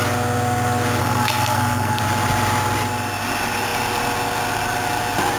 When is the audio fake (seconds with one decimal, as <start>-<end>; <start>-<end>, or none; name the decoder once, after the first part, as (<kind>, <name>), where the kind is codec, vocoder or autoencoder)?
1.0-2.0 (codec, SNAC)